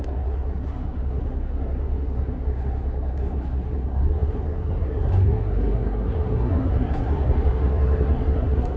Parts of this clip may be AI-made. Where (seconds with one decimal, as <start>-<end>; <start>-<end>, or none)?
0.0-8.8